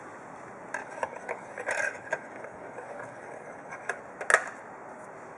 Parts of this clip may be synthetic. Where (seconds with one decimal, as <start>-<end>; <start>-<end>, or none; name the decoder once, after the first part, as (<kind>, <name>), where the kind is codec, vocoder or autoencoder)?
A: 0.8-4.0 (codec, DAC)